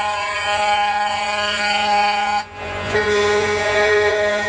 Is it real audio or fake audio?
fake